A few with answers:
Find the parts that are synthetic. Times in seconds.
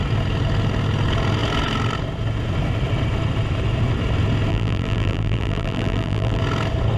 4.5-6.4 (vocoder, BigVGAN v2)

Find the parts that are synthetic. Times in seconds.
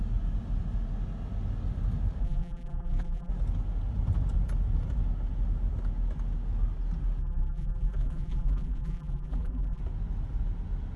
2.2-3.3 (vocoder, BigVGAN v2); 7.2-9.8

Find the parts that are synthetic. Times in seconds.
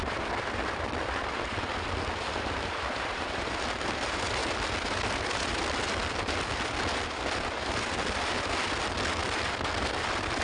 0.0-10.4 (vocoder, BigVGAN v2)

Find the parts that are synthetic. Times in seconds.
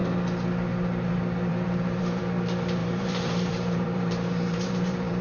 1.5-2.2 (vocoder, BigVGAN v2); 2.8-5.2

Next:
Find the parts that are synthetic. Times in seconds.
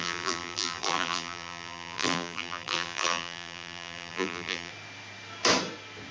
0.0-4.7 (vocoder, BigVGAN v2)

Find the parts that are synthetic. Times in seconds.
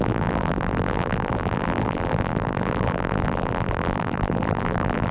0.0-5.1 (vocoder, BigVGAN v2)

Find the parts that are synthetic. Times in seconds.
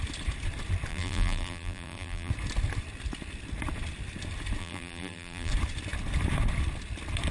0.9-2.3 (vocoder, BigVGAN v2); 4.6-5.5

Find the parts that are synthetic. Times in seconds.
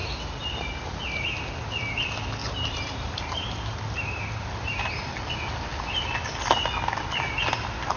2.4-5.1 (vocoder, BigVGAN v2)